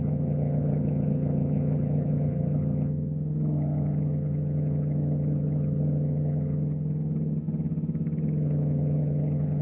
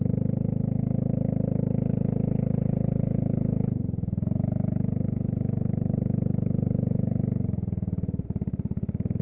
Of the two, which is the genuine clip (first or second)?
second